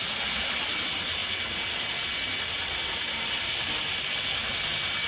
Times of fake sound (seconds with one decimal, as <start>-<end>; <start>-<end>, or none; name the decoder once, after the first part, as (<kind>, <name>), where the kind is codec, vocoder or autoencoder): none

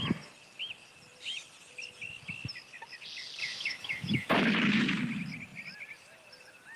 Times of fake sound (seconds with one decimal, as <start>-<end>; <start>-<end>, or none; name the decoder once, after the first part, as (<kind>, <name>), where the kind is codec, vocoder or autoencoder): 3.4-4.3 (autoencoder, DAC-VAE)